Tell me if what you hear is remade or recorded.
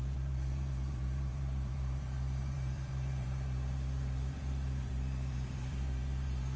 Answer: remade